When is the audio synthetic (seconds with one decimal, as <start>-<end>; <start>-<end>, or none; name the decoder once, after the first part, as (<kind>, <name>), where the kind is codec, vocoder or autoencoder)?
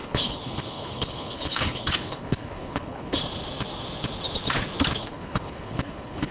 0.0-3.2 (codec, HILCodec); 5.0-6.3